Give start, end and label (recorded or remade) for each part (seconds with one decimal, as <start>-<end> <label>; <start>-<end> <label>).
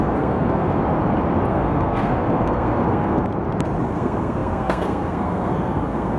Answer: 0.0-0.8 remade; 0.8-1.5 recorded; 1.5-3.3 remade; 3.3-3.8 recorded; 3.8-6.2 remade